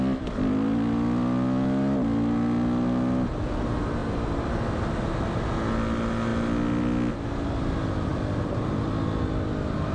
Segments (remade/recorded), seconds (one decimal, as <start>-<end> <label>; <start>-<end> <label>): 0.0-9.9 recorded